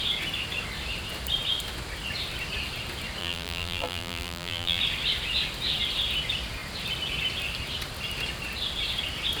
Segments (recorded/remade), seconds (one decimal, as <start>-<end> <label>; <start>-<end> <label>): 0.0-3.2 recorded; 3.2-4.8 remade; 4.8-9.4 recorded